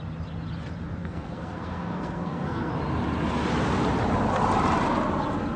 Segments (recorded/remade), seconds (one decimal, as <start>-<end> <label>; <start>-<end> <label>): 0.0-1.0 recorded; 1.0-2.7 remade; 2.7-5.6 recorded